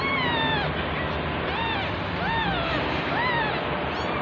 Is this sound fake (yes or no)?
no